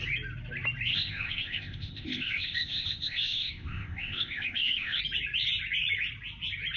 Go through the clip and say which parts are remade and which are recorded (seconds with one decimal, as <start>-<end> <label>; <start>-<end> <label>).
0.0-0.9 recorded; 0.9-5.0 remade; 5.0-6.8 recorded